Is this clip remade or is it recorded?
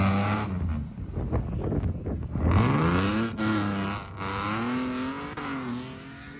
recorded